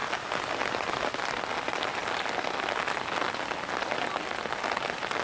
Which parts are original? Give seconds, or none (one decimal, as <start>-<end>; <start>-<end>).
0.0-5.2